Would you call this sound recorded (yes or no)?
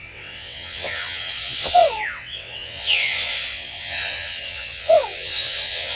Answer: no